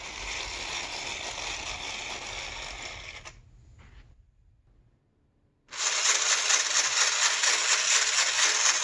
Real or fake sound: real